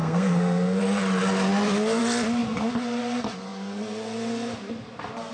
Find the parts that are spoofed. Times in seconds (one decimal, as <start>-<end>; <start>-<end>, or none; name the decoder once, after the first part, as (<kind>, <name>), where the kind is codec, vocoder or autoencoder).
0.0-0.8 (codec, SNAC)